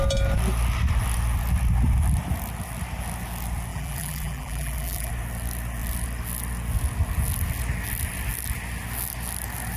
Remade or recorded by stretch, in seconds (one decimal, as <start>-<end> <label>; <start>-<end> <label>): 0.0-3.7 recorded; 3.7-5.1 remade; 5.1-9.8 recorded